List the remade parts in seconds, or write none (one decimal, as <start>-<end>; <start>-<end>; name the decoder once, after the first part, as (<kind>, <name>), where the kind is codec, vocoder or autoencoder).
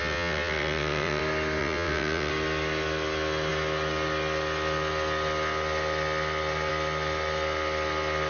0.0-1.2 (vocoder, WaveNeXt); 1.6-2.3